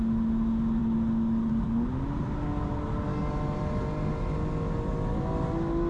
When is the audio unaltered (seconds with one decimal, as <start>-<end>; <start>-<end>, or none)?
0.0-5.9